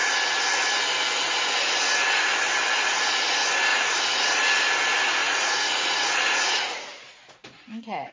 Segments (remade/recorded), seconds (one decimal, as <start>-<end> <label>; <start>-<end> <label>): 0.0-3.7 recorded; 3.7-4.5 remade; 4.5-5.2 recorded; 5.2-8.1 remade